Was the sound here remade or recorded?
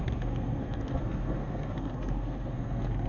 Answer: remade